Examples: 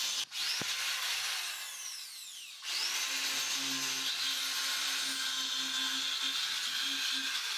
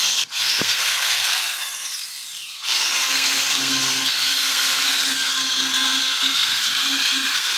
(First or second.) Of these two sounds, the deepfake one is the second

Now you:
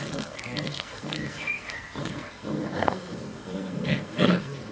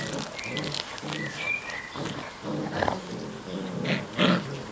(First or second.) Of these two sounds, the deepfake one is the first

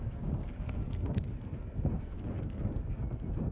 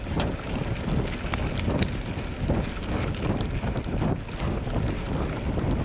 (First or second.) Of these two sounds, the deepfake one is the first